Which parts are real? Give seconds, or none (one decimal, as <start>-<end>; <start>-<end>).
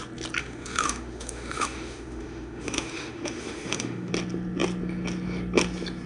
0.0-0.4; 4.1-6.1